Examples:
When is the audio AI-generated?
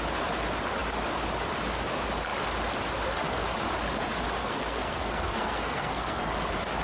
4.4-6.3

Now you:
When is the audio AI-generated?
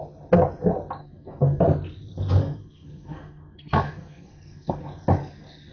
1.0-1.6; 2.4-4.8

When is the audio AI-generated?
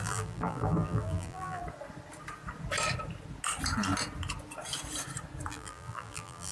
0.0-1.6; 5.5-6.5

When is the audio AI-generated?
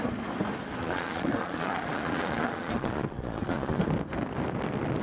0.8-3.8